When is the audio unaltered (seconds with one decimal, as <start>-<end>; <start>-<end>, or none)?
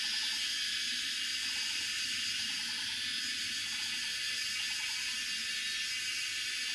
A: 0.0-6.7